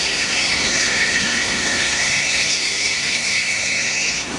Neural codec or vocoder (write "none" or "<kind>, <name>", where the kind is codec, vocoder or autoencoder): codec, SNAC